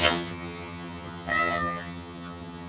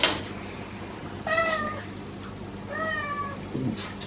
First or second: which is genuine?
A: second